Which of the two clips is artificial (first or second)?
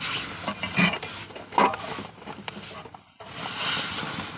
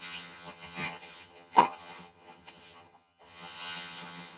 second